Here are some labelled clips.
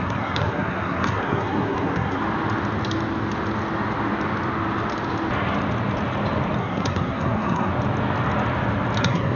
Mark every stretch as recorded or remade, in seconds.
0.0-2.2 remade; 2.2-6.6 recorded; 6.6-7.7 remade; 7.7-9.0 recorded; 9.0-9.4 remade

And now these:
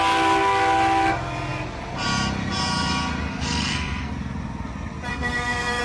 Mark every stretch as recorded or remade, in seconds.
0.0-3.3 recorded; 3.3-4.1 remade; 4.1-5.1 recorded; 5.1-5.8 remade

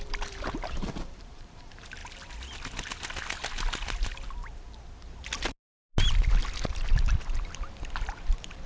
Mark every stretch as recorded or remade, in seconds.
0.0-2.0 remade; 2.0-6.6 recorded; 6.6-7.3 remade; 7.3-8.1 recorded; 8.1-8.7 remade

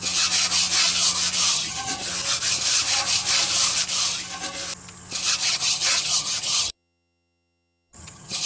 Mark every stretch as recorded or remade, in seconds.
0.0-1.5 recorded; 1.5-2.1 remade; 2.1-5.4 recorded; 5.4-8.5 remade

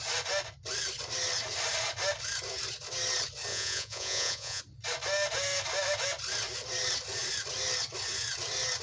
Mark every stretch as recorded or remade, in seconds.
0.0-3.5 recorded; 3.5-4.6 remade; 4.6-8.8 recorded

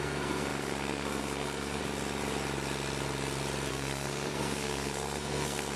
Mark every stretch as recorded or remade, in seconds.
0.0-1.8 remade; 1.8-3.7 recorded; 3.7-5.8 remade